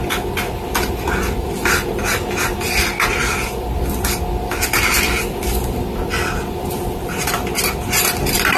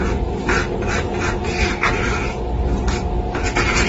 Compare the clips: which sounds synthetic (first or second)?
first